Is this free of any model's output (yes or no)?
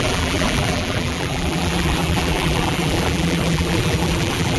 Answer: no